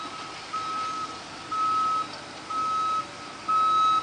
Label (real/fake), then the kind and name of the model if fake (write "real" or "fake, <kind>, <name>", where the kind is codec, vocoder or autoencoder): real